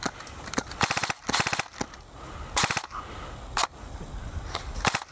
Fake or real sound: real